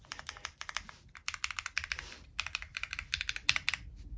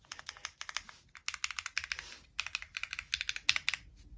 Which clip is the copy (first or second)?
first